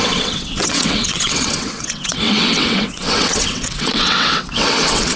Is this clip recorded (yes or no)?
no